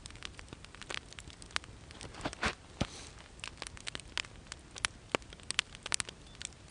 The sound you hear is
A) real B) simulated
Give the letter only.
A